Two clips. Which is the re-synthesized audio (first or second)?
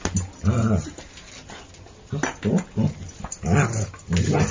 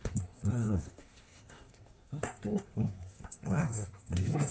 second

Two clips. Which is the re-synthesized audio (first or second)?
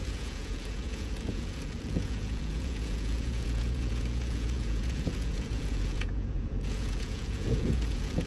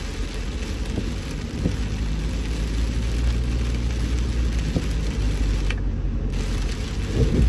first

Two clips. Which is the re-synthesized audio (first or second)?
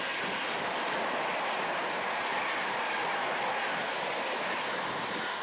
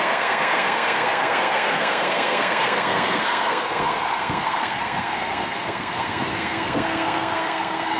second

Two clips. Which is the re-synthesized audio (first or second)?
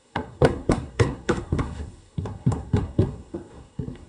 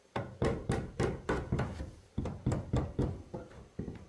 first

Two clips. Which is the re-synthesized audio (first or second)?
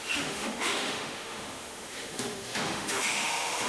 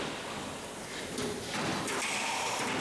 first